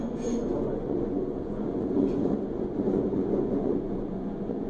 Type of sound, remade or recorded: remade